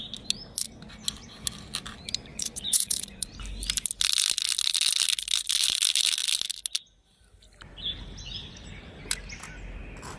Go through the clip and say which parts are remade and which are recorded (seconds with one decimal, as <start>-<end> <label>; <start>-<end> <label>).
0.0-2.3 recorded; 2.3-3.3 remade; 3.3-10.2 recorded